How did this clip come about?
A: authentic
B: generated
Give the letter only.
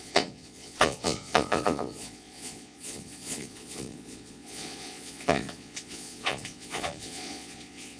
B